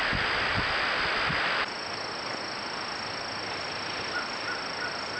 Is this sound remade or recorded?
recorded